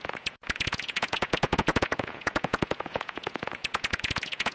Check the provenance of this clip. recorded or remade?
remade